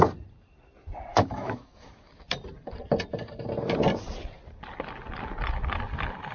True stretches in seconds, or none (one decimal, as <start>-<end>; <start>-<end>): 0.0-1.1; 2.1-6.3